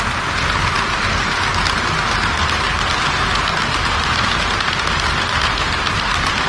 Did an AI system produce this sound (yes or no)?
no